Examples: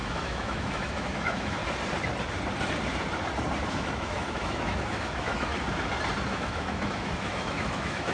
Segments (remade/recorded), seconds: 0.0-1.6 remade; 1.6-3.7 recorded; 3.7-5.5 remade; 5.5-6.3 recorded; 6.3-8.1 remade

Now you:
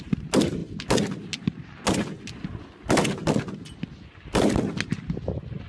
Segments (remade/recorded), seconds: 0.0-5.7 recorded

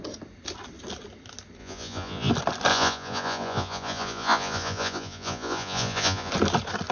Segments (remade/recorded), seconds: 0.0-1.6 recorded; 1.6-2.3 remade; 2.3-2.7 recorded; 2.7-6.3 remade; 6.3-6.9 recorded